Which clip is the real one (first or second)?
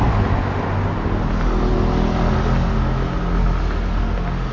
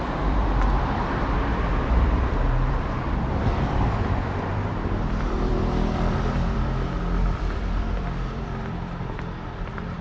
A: first